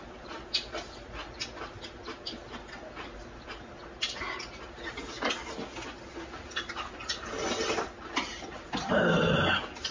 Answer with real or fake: real